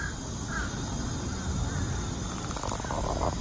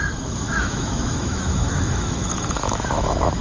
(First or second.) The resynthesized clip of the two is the second